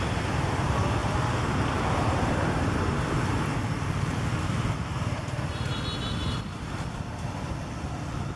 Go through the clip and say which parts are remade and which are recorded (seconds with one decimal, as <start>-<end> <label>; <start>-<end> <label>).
0.0-6.2 recorded; 6.2-7.5 remade; 7.5-8.4 recorded